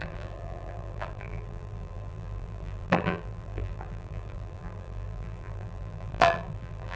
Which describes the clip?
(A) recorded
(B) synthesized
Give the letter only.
B